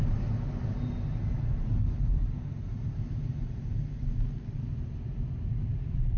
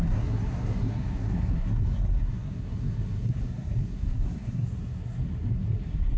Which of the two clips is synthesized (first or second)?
second